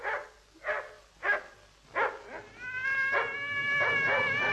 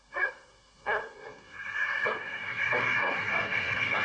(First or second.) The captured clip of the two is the first